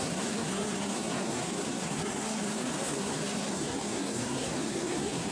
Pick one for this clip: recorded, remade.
remade